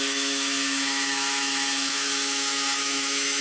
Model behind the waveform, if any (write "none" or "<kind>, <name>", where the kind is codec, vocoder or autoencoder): autoencoder, DAC-VAE